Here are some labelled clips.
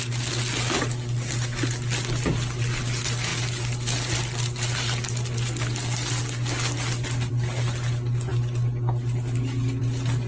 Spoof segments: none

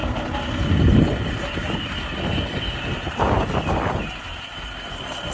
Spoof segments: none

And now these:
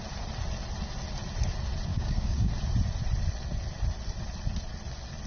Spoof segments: 1.9-2.5 (codec, DAC)

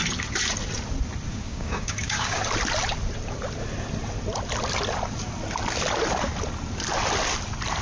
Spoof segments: 1.3-2.4 (codec, DAC)

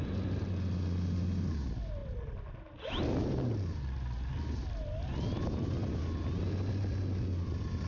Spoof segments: none

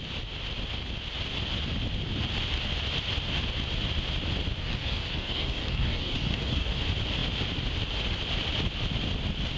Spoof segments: 4.6-6.8 (codec, DAC)

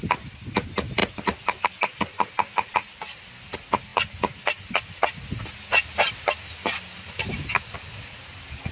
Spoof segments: none

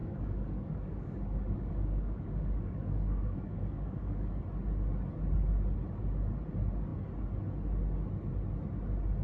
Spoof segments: 0.0-4.4 (codec, DAC)